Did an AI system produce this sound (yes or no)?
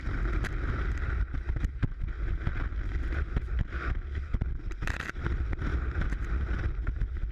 no